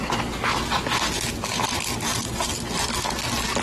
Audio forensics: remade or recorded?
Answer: recorded